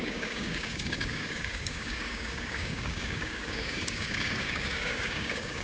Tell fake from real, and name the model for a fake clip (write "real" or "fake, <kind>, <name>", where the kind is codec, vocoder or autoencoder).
fake, codec, DAC